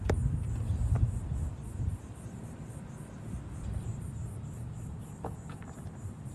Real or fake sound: fake